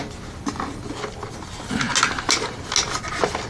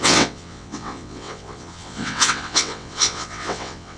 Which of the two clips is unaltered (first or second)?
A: first